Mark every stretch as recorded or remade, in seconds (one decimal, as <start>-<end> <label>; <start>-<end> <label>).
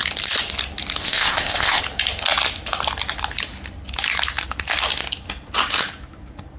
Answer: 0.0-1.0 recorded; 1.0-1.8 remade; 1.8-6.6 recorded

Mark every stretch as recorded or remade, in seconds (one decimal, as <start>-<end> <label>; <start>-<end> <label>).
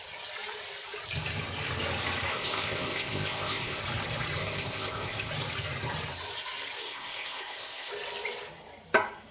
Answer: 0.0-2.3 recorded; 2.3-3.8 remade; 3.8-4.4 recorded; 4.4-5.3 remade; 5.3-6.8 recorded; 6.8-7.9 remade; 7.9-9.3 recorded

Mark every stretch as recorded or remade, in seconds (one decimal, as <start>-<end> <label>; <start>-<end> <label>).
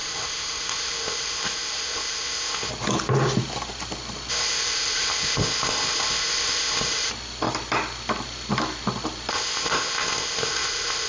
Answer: 0.0-2.7 remade; 2.7-4.3 recorded; 4.3-7.1 remade; 7.1-9.3 recorded; 9.3-11.1 remade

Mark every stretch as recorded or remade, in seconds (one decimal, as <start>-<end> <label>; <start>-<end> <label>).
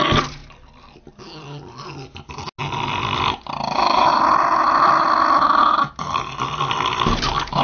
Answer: 0.0-7.6 recorded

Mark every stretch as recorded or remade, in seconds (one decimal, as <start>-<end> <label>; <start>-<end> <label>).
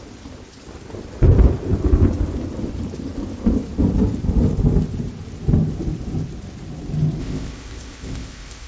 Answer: 0.0-7.2 recorded; 7.2-8.7 remade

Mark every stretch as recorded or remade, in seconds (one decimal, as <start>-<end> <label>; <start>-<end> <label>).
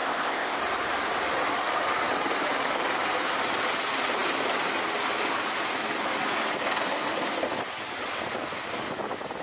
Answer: 0.0-0.6 remade; 0.6-9.4 recorded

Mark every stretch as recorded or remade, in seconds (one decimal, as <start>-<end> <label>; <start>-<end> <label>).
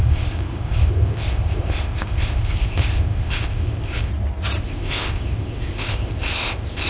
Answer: 0.0-4.1 remade; 4.1-4.6 recorded; 4.6-6.9 remade